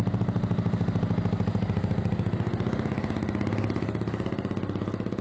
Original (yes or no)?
yes